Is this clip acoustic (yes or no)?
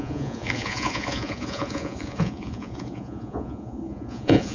no